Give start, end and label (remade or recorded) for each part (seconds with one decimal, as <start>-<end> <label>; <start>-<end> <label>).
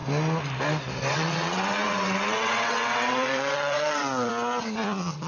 0.0-1.1 recorded; 1.1-4.3 remade; 4.3-5.3 recorded